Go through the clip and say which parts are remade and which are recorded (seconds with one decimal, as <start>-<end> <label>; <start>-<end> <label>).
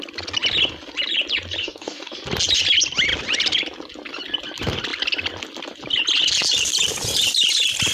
0.0-1.6 recorded; 1.6-2.1 remade; 2.1-7.9 recorded